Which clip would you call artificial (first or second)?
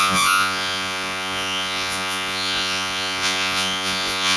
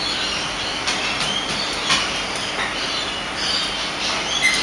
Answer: first